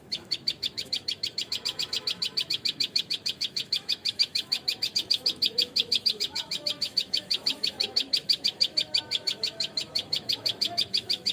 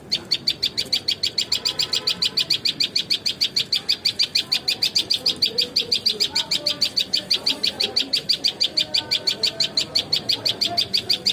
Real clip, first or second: second